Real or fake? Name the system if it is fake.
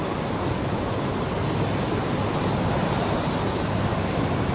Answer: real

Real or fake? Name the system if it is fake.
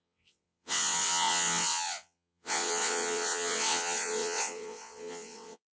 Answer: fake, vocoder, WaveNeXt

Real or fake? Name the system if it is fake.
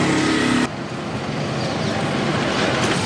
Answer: real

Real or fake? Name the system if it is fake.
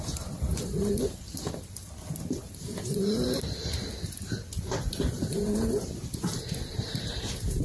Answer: fake, vocoder, BigVGAN v2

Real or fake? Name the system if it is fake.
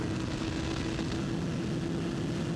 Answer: real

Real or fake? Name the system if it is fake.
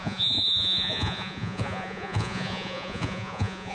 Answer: fake, vocoder, Vocos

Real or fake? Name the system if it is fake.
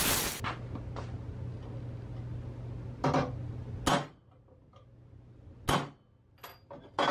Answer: real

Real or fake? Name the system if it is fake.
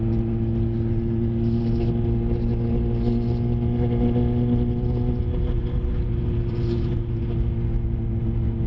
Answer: real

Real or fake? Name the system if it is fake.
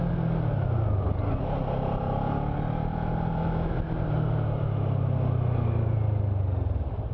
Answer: real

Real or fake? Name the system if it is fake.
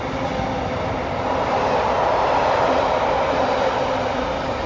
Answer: real